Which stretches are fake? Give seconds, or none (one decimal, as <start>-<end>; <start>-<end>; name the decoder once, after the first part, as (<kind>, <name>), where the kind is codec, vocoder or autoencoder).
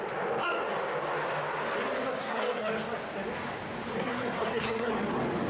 2.2-2.7 (codec, SNAC); 3.9-4.9